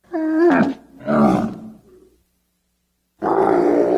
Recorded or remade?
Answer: recorded